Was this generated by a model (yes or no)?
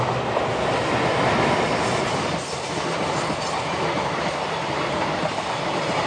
no